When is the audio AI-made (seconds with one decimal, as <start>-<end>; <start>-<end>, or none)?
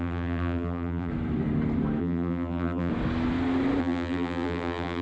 0.0-1.1; 2.0-2.9; 3.8-5.0